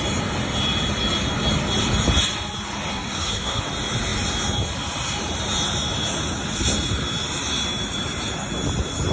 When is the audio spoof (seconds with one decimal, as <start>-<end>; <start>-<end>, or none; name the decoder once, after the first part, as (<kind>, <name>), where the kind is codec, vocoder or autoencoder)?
2.9-3.6 (codec, SNAC)